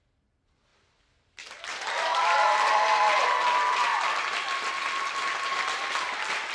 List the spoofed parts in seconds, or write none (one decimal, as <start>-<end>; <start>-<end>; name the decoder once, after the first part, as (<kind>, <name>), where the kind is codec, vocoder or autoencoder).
0.0-6.5 (vocoder, BigVGAN v2)